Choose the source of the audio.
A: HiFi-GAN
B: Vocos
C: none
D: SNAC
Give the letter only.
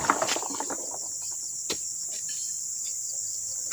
C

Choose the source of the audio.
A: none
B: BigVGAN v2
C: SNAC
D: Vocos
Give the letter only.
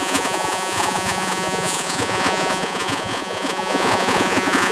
D